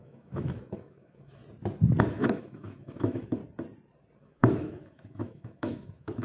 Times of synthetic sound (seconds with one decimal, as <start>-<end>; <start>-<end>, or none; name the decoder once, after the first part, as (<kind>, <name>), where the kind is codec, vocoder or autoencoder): 0.0-1.4 (autoencoder, DAC-VAE); 2.0-3.4; 4.2-6.2